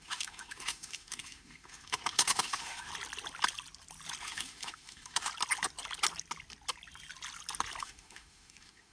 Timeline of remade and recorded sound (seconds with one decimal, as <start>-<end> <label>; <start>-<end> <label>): 0.0-2.9 remade; 2.9-4.2 recorded; 4.2-5.3 remade; 5.3-7.8 recorded; 7.8-8.9 remade